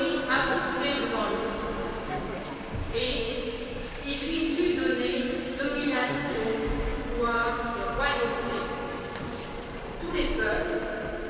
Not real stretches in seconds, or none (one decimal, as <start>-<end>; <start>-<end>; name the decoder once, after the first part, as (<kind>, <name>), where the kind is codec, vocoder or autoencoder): 1.8-4.6 (codec, DAC); 5.1-7.0